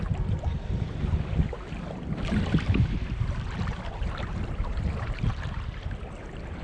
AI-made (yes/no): yes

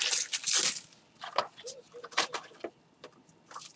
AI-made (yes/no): no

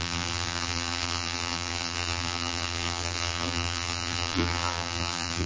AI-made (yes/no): yes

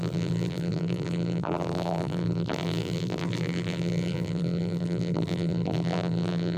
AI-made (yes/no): yes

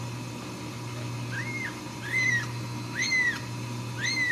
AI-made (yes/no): no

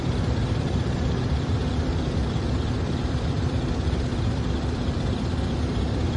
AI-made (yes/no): yes